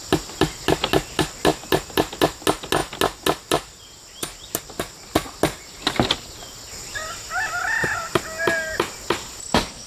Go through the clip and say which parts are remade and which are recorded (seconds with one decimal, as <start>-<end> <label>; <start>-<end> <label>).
0.0-9.9 recorded